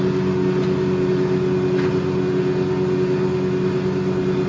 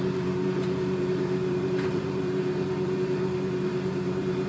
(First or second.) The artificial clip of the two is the second